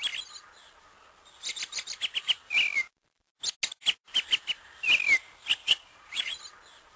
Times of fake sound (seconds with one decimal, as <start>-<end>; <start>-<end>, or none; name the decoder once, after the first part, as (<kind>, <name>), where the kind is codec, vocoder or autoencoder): 5.6-6.4 (vocoder, Vocos)